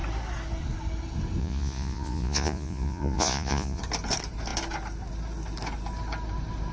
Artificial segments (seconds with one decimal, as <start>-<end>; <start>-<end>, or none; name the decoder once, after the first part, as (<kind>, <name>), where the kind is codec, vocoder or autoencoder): 1.4-3.8 (vocoder, Vocos)